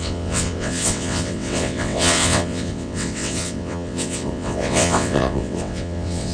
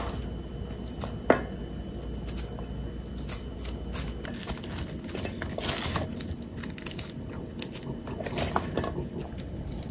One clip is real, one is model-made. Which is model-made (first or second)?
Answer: first